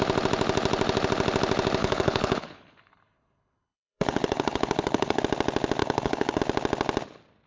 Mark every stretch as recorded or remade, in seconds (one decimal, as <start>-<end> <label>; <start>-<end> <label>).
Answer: 0.0-1.8 recorded; 1.8-5.2 remade; 5.2-5.8 recorded; 5.8-6.4 remade; 6.4-7.5 recorded